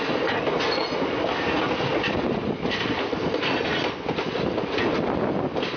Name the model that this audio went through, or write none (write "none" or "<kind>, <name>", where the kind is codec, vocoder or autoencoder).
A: none